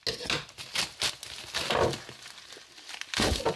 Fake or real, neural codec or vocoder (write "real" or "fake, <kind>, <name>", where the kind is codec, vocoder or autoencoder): real